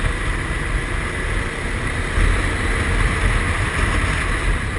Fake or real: real